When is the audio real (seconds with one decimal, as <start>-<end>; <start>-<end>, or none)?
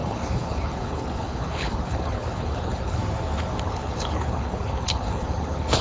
3.0-3.6